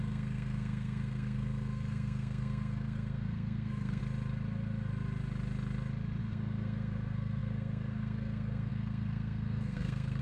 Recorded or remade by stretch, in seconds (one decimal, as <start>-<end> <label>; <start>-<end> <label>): 0.0-4.0 remade; 4.0-6.2 recorded; 6.2-10.2 remade